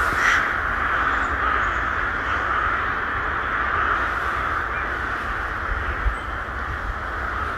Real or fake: real